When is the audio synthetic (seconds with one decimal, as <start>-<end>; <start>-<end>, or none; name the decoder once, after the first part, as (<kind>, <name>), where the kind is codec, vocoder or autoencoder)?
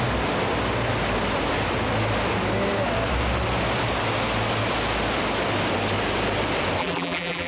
6.8-7.5 (vocoder, BigVGAN v2)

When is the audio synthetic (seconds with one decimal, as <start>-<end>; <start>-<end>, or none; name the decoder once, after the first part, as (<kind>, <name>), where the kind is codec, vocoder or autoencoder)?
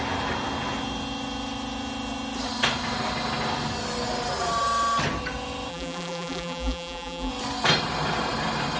5.7-7.3 (vocoder, BigVGAN v2)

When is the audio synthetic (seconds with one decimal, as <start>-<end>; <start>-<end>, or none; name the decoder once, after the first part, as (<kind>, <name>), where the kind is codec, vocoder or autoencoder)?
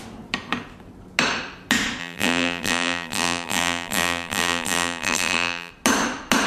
2.0-5.7 (vocoder, BigVGAN v2)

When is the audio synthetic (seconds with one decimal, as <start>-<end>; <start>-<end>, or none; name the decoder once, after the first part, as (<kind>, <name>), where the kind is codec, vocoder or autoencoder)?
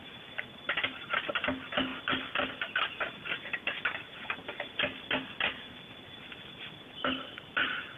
none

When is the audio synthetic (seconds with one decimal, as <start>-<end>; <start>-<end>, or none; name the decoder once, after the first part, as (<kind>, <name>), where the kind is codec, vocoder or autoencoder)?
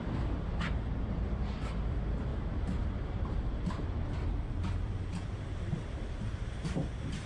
2.3-3.9 (vocoder, BigVGAN v2)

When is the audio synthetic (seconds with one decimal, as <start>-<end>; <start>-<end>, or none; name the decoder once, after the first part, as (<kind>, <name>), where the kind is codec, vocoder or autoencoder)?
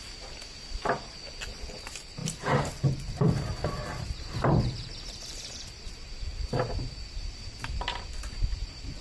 0.0-2.2 (vocoder, BigVGAN v2); 2.7-3.5; 4.4-6.3; 6.8-9.0